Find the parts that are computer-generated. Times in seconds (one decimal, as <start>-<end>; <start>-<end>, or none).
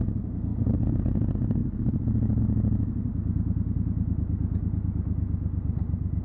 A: none